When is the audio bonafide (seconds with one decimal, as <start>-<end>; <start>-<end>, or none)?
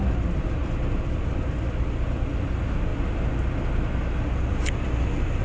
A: 0.0-5.4